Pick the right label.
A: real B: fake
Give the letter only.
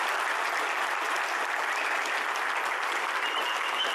A